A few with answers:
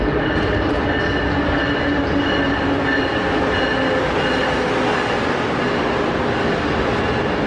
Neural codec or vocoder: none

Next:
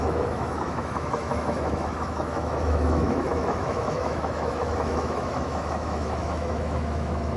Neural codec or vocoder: autoencoder, DAC-VAE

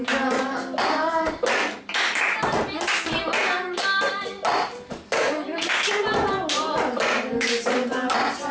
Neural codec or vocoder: none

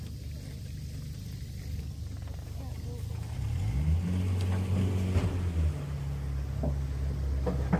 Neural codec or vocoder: none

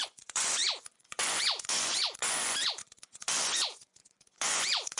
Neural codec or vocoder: vocoder, Vocos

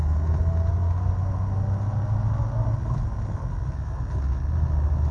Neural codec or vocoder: none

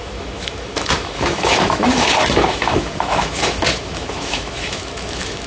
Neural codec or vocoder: autoencoder, DAC-VAE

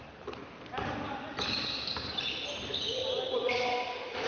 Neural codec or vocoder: vocoder, BigVGAN v2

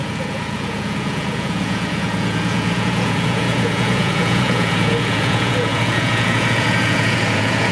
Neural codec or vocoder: vocoder, Vocos